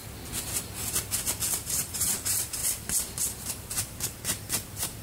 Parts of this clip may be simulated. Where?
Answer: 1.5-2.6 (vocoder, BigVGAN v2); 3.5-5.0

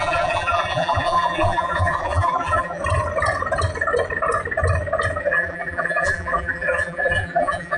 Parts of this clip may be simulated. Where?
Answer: 0.0-2.8 (vocoder, BigVGAN v2); 5.2-7.8